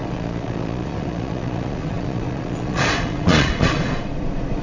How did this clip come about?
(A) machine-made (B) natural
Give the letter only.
A